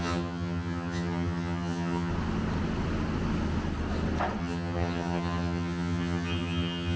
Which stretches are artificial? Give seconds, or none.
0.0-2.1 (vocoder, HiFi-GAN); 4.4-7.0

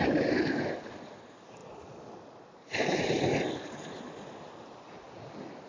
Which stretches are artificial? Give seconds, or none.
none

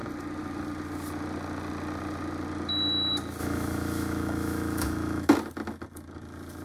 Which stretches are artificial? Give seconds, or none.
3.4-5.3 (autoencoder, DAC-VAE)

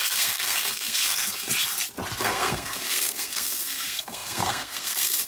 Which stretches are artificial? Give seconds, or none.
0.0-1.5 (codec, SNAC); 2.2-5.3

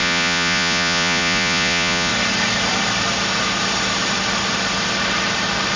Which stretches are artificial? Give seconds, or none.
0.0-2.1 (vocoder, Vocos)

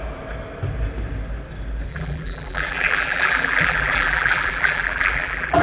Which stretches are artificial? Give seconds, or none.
1.9-5.6 (vocoder, BigVGAN v2)